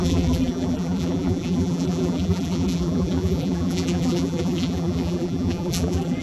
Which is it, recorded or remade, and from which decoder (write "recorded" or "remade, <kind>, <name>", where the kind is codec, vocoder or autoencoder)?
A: remade, vocoder, BigVGAN v2